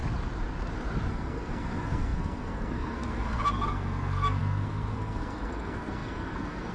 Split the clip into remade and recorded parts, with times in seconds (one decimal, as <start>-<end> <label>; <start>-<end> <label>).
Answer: 0.0-1.1 recorded; 1.1-6.7 remade